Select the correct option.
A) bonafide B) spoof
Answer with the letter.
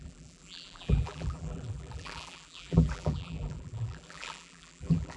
B